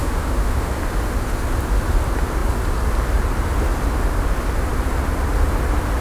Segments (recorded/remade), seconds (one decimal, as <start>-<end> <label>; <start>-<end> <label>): 0.0-0.7 remade; 0.7-6.0 recorded